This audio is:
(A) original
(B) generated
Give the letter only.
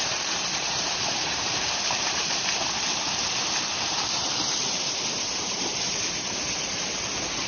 B